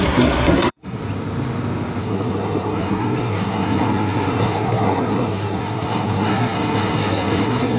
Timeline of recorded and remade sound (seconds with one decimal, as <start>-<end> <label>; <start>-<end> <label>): 0.0-1.0 remade; 1.0-2.0 recorded; 2.0-7.8 remade